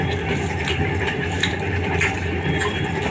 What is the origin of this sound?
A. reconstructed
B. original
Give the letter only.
A